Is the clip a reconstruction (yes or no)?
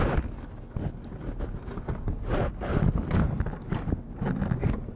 no